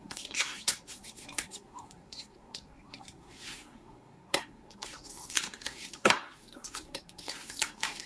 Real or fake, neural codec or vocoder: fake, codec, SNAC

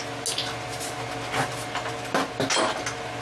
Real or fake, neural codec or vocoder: real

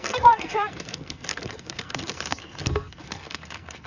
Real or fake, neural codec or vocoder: fake, codec, SNAC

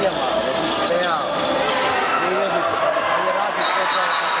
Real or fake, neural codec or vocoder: real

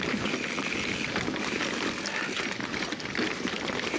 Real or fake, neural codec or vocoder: real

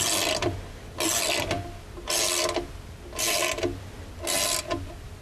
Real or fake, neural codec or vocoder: real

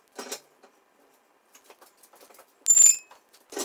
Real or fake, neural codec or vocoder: real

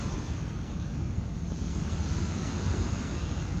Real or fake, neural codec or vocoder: fake, codec, SNAC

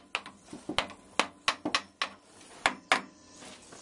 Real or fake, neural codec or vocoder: real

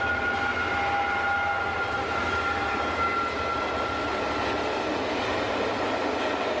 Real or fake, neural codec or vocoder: real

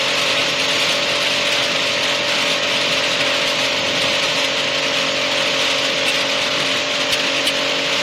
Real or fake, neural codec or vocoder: real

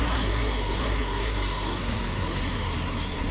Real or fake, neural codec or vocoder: fake, codec, SNAC